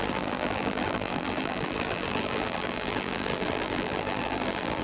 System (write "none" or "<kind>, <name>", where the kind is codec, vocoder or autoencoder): vocoder, BigVGAN v2